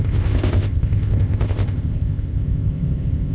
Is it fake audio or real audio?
fake